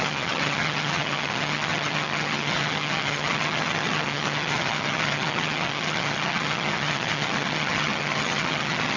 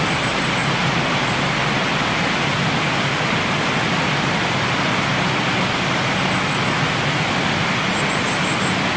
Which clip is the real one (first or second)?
second